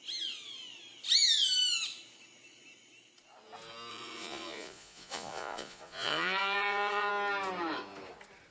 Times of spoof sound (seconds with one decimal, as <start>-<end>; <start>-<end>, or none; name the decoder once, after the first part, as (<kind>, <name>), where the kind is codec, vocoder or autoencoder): 3.9-7.1 (vocoder, Vocos)